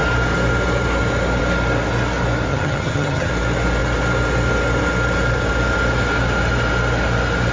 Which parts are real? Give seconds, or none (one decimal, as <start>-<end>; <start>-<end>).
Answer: 0.0-2.5; 3.3-7.5